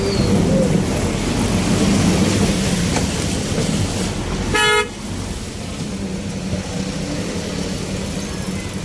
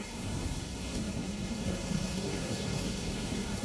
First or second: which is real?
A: first